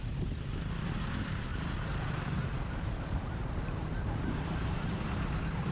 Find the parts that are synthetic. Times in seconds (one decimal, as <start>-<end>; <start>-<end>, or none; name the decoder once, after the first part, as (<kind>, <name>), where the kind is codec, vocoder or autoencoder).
1.5-4.9 (vocoder, BigVGAN v2)